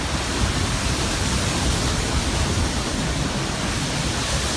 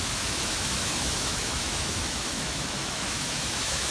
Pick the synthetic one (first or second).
second